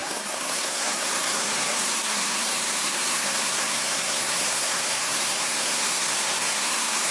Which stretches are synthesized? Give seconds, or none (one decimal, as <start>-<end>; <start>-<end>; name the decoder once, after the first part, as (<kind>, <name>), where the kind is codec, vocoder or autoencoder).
0.0-7.1 (codec, SNAC)